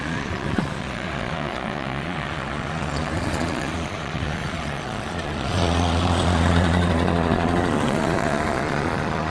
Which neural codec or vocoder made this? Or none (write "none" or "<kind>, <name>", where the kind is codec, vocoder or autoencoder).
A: vocoder, Vocos